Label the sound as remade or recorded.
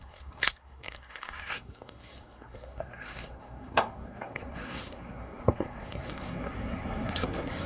remade